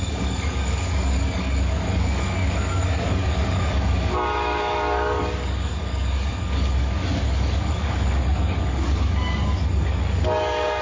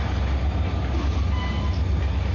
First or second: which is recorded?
second